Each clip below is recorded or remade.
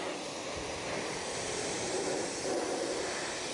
recorded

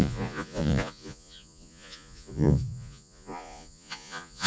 remade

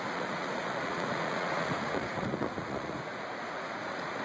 remade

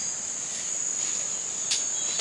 recorded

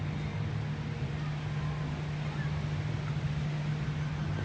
recorded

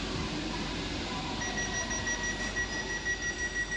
recorded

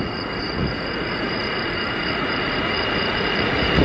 remade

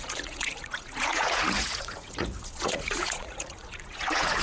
remade